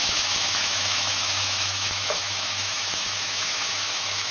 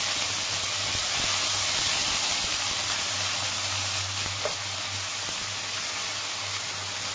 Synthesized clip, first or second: first